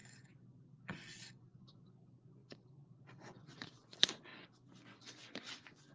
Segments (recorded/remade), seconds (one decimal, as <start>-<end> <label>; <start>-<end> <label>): 0.0-5.9 remade